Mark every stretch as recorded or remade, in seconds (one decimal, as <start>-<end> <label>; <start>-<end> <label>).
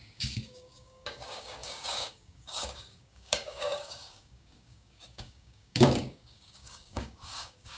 0.0-7.8 remade